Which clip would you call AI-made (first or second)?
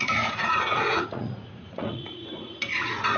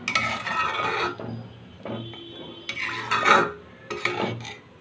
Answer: first